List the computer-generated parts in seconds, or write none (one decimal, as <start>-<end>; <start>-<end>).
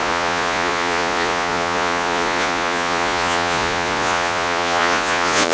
0.0-5.5